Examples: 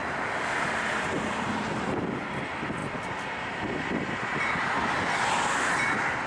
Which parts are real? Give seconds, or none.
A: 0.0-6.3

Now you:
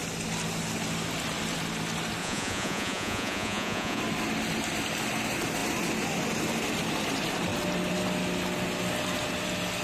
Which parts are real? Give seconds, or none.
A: 0.0-2.2; 4.0-9.8

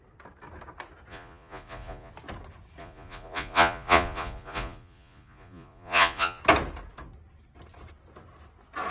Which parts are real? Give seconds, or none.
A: 0.0-1.1; 2.1-2.8; 6.4-8.9

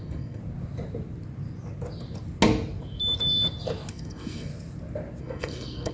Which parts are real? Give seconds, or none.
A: 0.4-3.9; 4.5-5.2

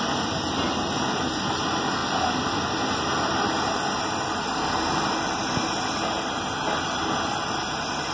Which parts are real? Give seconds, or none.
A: 0.0-8.1

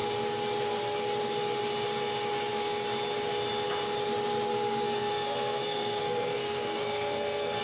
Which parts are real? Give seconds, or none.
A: 0.0-4.5

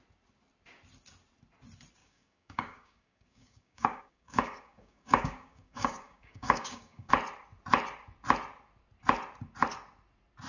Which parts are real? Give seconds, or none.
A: 0.0-2.0; 7.1-10.5